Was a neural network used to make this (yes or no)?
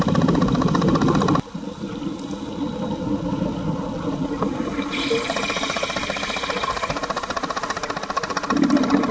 no